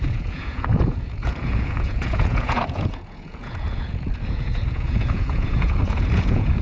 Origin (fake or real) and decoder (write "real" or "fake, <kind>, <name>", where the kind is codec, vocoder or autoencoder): fake, vocoder, Vocos